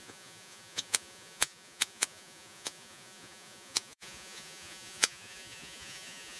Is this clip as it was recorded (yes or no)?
no